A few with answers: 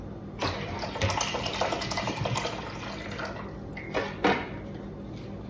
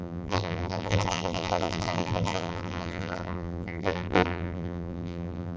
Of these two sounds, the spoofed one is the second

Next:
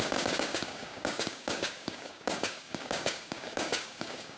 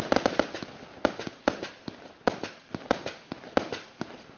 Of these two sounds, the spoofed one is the first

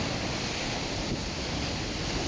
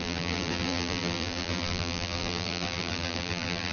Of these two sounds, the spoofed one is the second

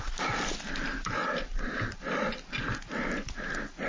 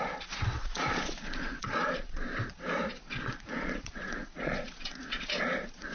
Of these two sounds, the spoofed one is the second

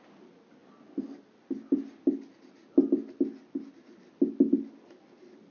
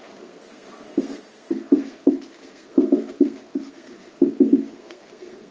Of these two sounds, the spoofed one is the second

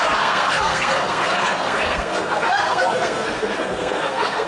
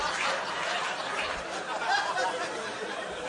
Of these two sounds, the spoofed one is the first